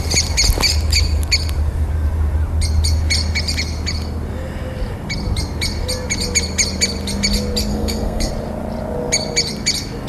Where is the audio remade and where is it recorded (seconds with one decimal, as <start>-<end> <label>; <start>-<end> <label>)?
0.0-7.7 recorded; 7.7-8.3 remade; 8.3-10.1 recorded